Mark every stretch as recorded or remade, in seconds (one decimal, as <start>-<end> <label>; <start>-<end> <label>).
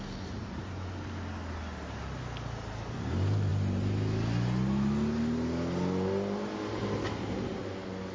0.0-8.1 recorded